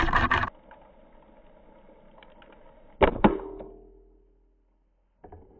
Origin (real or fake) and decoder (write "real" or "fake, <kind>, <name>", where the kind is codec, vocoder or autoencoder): real